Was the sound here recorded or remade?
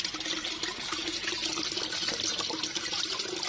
recorded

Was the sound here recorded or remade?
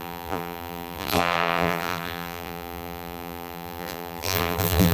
remade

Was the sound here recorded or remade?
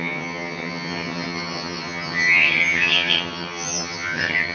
remade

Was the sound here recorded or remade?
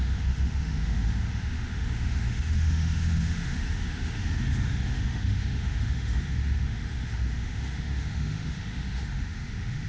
remade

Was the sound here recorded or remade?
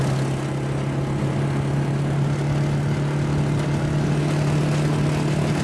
recorded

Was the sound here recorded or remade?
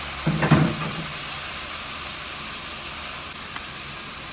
recorded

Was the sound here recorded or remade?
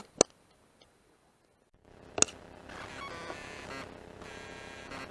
recorded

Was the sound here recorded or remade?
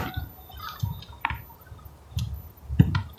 recorded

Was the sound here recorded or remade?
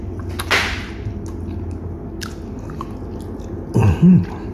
recorded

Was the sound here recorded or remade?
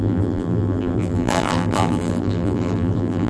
remade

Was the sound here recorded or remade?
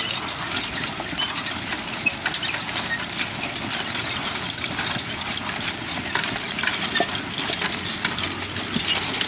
recorded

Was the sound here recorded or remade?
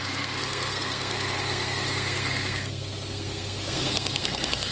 remade